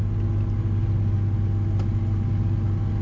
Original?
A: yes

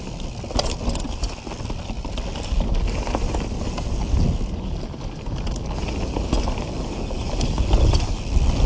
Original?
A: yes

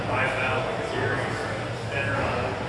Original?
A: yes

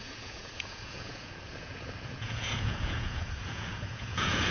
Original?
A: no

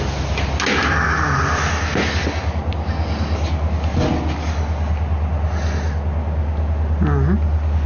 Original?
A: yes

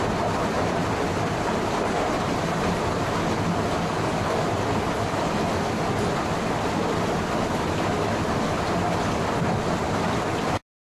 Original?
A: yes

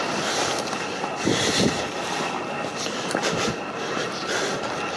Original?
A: yes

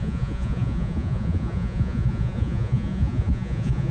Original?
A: no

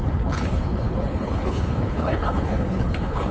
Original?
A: no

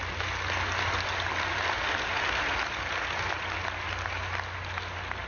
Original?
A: yes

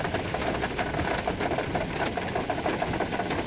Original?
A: yes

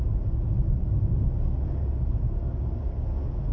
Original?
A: yes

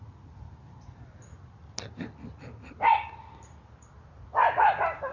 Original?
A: yes